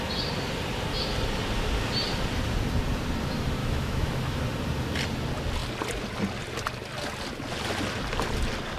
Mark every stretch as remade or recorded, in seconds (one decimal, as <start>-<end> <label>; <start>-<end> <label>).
0.0-3.6 recorded; 3.6-4.4 remade; 4.4-8.8 recorded